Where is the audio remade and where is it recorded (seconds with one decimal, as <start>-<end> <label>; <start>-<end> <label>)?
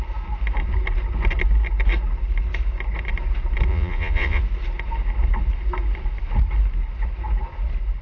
0.0-3.7 recorded; 3.7-4.4 remade; 4.4-8.0 recorded